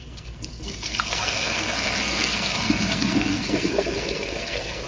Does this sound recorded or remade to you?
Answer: remade